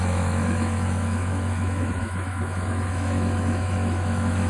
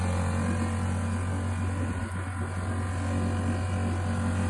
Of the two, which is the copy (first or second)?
first